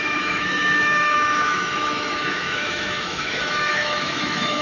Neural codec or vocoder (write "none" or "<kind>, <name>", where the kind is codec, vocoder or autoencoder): autoencoder, DAC-VAE